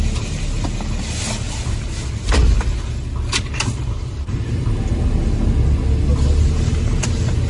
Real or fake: real